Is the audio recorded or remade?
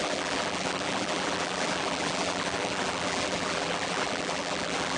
remade